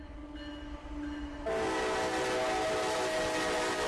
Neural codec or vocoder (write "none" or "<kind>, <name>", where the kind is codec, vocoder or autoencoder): none